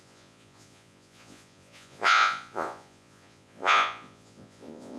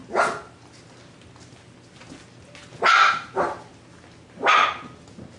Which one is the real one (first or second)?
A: second